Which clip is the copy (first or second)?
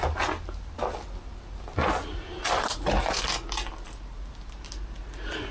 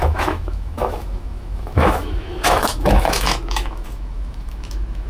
second